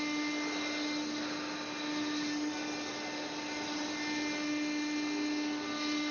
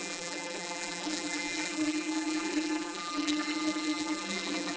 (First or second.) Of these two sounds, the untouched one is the first